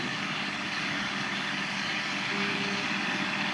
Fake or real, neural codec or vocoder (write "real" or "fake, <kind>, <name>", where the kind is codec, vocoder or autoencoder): fake, codec, DAC